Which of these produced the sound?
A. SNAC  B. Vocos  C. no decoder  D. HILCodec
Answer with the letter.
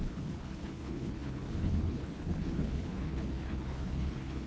D